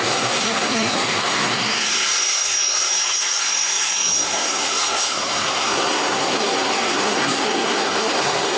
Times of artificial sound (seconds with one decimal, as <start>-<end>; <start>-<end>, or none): 0.0-8.6

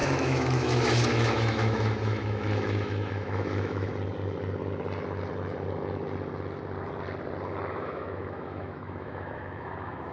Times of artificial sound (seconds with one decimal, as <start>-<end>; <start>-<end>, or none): 0.0-3.9; 7.7-10.1

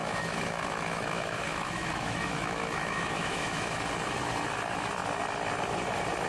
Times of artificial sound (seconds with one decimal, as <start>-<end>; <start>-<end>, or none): 0.0-3.8

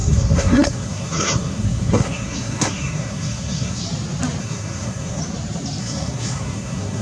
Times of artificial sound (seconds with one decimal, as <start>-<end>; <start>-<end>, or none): 0.0-3.8; 4.4-5.2; 5.8-7.0

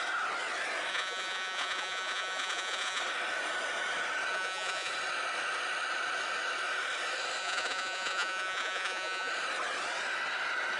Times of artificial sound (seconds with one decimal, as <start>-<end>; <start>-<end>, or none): 0.9-3.0; 4.3-4.9; 7.4-9.3

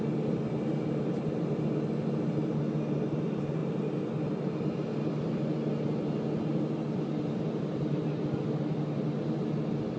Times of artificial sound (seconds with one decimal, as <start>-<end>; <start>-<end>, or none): none

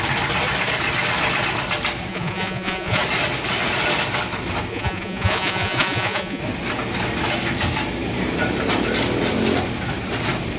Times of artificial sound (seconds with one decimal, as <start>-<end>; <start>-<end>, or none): 2.1-3.0; 4.7-6.4